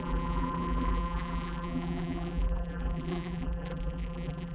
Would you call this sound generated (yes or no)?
yes